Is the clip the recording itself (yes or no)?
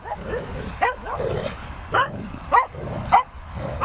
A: no